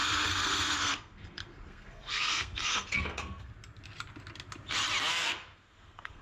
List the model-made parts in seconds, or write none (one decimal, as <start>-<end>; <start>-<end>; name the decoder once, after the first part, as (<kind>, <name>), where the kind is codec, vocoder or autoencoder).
0.0-3.5 (codec, SNAC); 5.1-6.2